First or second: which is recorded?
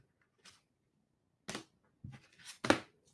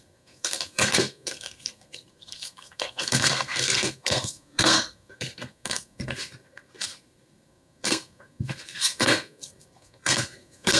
first